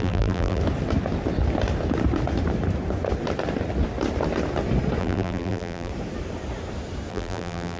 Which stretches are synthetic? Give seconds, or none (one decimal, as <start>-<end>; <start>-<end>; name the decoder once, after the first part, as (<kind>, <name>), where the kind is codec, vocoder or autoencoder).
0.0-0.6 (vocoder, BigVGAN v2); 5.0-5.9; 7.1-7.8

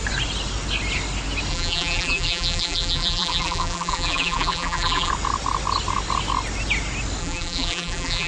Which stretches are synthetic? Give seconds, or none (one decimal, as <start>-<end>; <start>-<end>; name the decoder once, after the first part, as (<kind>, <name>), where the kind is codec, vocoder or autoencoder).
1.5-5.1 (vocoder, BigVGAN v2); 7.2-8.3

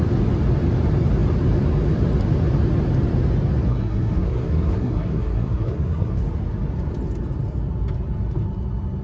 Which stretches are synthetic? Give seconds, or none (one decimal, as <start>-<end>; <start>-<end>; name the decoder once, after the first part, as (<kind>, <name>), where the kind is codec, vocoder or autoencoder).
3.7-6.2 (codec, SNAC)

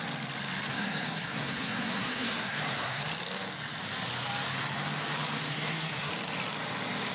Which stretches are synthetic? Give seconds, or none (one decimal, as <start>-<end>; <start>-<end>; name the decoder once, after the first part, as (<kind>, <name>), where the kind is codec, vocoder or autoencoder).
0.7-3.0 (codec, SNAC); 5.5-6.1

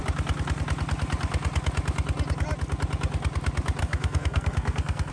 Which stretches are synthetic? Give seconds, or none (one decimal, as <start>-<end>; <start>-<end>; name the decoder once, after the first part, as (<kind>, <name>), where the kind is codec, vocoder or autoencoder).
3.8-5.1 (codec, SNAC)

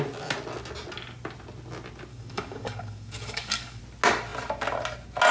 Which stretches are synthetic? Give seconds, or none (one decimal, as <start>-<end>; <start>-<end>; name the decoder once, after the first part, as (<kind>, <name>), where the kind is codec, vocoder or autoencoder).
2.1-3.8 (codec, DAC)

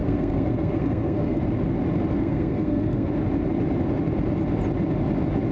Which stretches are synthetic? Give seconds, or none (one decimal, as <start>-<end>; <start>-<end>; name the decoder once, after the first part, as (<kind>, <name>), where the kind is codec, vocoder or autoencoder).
0.0-1.4 (codec, SNAC); 2.2-3.1

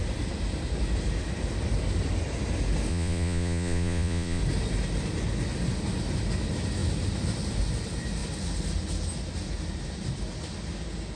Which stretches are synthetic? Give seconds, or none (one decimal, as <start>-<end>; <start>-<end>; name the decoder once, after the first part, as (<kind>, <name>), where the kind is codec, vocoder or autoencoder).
2.9-4.4 (vocoder, Vocos)